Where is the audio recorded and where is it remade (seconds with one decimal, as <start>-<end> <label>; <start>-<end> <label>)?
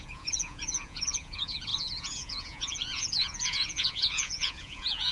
0.0-5.1 remade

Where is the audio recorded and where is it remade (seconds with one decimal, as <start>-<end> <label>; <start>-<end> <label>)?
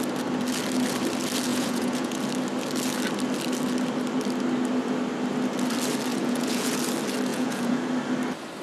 0.0-1.5 recorded; 1.5-2.2 remade; 2.2-6.1 recorded; 6.1-6.7 remade; 6.7-7.3 recorded; 7.3-7.8 remade; 7.8-8.6 recorded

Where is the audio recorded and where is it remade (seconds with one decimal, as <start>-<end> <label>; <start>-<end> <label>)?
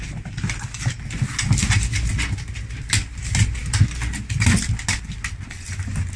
0.0-6.2 recorded